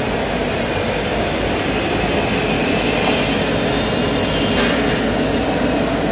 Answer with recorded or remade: recorded